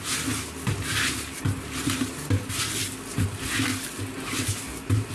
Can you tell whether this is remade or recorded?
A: recorded